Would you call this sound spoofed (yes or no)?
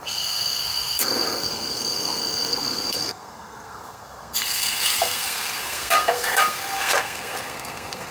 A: yes